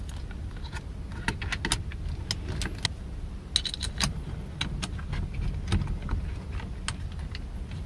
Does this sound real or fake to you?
real